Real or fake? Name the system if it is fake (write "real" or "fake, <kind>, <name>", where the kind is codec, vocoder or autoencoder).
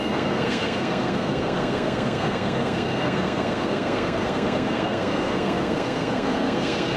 fake, codec, SNAC